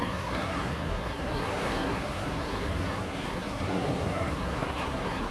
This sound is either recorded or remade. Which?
remade